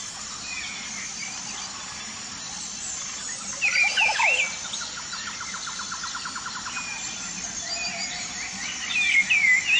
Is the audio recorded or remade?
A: recorded